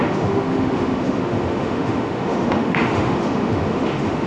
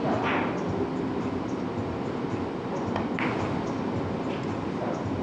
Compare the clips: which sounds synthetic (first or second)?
first